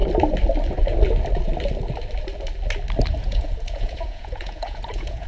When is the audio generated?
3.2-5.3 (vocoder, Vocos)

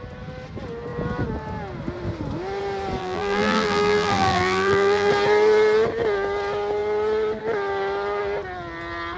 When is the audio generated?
3.0-5.1 (vocoder, BigVGAN v2)

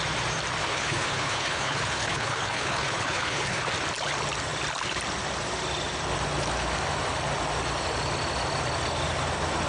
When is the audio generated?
0.6-3.6 (codec, HILCodec)

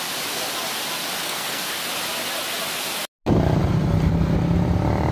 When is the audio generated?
1.2-1.7 (codec, SNAC)

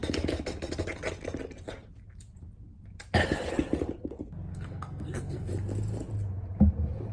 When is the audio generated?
4.5-5.5 (codec, SNAC)

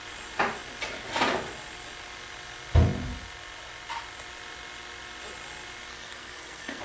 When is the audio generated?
5.9-6.8 (codec, SNAC)

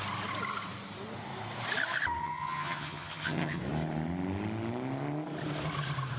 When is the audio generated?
2.2-3.6 (vocoder, HiFi-GAN)

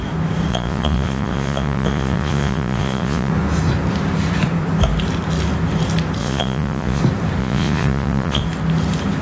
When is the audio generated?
0.5-3.3 (vocoder, Vocos); 6.2-7.0; 7.4-8.4